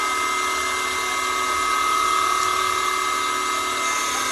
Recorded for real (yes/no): yes